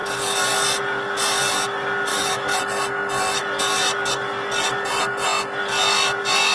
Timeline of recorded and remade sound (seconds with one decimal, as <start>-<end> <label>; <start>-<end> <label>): 0.0-2.1 recorded; 2.1-2.6 remade; 2.6-6.5 recorded